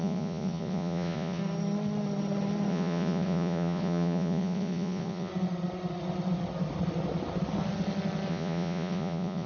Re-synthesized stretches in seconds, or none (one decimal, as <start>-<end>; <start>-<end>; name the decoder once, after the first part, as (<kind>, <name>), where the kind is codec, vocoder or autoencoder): 0.0-1.4 (vocoder, Vocos); 2.7-5.3; 8.3-9.5